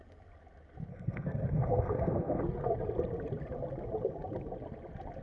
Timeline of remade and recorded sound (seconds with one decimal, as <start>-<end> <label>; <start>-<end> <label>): 0.0-0.9 recorded; 0.9-2.4 remade; 2.4-5.2 recorded